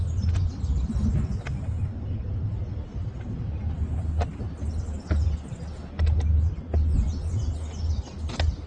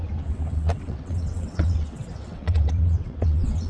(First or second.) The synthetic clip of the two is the second